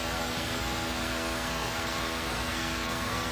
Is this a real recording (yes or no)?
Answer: no